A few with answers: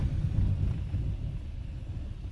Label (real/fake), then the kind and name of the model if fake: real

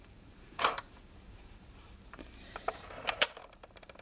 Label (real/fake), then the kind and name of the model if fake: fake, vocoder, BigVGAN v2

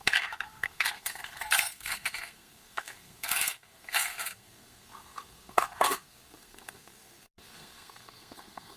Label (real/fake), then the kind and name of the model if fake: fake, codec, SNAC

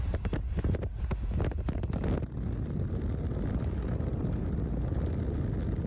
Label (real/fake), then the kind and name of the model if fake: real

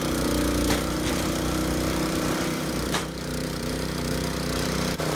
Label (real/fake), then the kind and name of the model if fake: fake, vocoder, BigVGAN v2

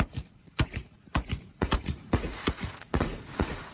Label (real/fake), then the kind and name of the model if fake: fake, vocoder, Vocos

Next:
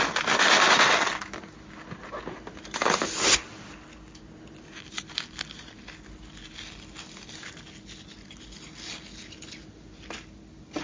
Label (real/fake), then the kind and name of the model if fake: real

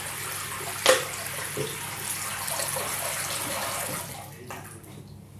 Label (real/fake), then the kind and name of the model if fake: real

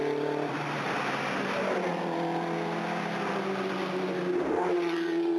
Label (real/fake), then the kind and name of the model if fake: real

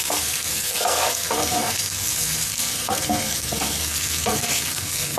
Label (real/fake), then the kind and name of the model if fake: fake, codec, SNAC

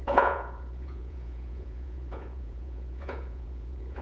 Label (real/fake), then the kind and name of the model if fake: fake, vocoder, Vocos